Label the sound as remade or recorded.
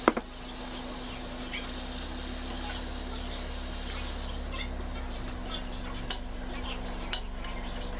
recorded